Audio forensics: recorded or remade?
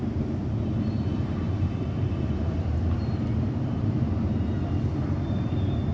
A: remade